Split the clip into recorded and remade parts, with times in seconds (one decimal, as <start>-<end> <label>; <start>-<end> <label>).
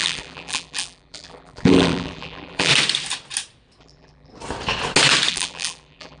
0.0-2.7 remade; 2.7-3.8 recorded; 3.8-4.3 remade; 4.3-5.3 recorded; 5.3-6.2 remade